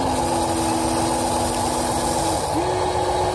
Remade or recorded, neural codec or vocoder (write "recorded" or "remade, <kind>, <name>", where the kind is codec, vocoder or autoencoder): recorded